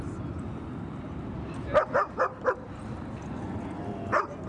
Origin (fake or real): real